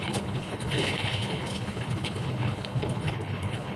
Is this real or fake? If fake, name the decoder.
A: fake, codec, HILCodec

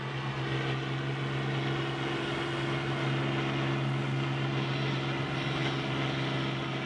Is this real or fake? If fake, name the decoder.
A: real